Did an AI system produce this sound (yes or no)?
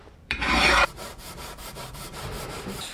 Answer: yes